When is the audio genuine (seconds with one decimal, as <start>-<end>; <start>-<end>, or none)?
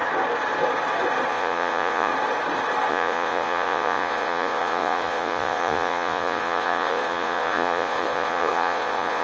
0.0-1.3; 2.1-2.9